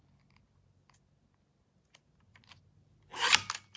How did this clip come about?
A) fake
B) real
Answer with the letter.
B